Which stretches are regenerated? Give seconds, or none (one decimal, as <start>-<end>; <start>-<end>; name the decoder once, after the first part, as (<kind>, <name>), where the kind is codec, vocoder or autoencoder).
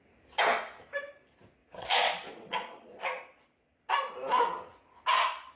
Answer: 1.6-3.9 (vocoder, Vocos)